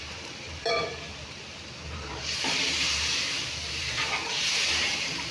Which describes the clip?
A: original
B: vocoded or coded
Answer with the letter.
B